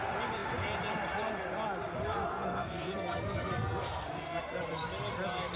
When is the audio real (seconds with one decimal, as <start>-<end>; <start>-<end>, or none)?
0.0-2.3; 4.4-5.6